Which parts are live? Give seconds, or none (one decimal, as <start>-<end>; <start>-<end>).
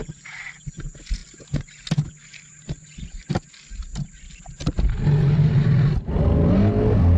0.0-7.2